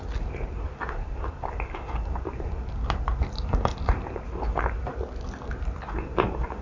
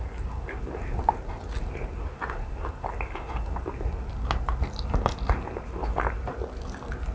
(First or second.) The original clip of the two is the second